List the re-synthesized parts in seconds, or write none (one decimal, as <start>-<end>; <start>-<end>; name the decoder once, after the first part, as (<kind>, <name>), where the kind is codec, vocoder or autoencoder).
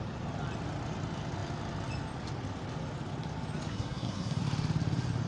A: 3.7-4.4 (codec, SNAC)